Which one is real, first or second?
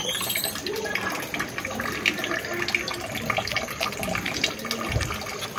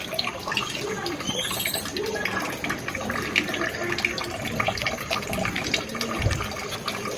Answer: first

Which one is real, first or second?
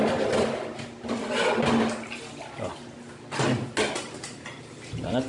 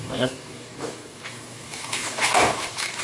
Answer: first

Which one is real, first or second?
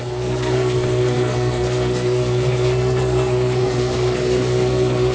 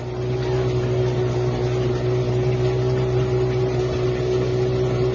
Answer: second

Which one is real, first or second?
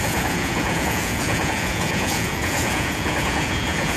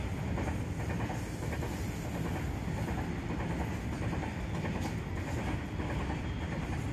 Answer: second